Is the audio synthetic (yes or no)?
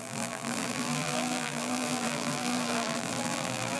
yes